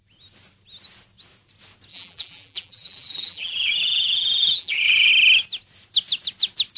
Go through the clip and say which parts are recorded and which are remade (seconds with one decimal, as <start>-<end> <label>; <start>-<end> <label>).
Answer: 0.0-1.9 recorded; 1.9-5.1 remade; 5.1-6.8 recorded